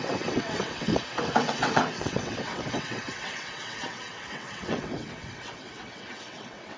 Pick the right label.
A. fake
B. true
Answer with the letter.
A